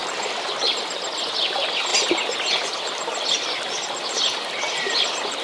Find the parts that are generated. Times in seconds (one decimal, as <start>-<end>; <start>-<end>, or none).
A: 0.0-1.1; 1.9-4.6